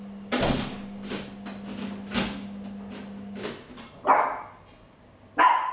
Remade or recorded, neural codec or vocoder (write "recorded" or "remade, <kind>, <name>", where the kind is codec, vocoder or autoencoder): recorded